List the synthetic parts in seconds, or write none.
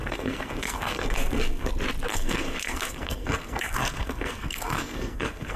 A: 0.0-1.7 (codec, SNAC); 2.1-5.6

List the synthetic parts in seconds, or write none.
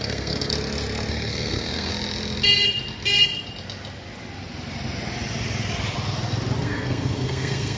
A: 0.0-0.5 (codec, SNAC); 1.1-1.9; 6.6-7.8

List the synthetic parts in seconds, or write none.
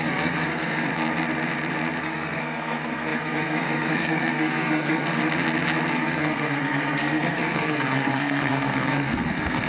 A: 0.0-0.9 (codec, SNAC); 2.0-5.2; 5.9-9.7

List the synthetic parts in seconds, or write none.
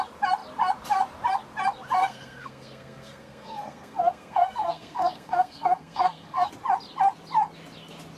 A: 2.0-6.5 (codec, SNAC)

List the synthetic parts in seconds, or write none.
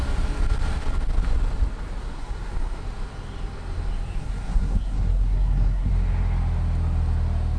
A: 2.0-2.8 (codec, SNAC); 4.2-5.9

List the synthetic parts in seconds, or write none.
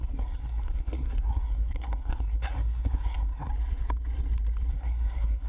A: 0.0-3.5 (codec, SNAC); 4.7-5.5